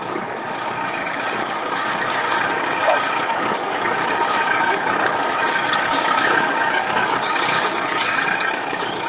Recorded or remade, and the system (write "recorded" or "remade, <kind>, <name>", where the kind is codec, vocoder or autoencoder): remade, codec, DAC